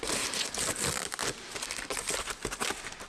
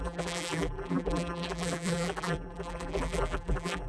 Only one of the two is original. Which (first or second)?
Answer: first